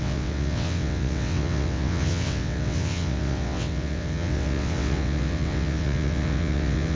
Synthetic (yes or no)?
yes